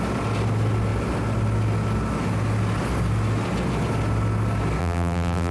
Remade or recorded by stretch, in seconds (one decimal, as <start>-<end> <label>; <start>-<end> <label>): 0.0-4.8 recorded; 4.8-5.5 remade